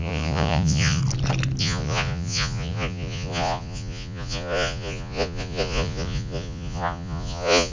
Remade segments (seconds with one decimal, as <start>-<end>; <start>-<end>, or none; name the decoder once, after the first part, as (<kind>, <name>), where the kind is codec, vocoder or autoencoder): 0.0-1.0 (vocoder, Vocos); 1.6-7.7